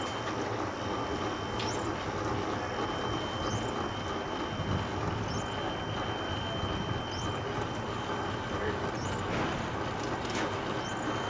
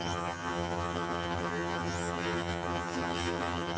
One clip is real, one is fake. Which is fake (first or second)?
second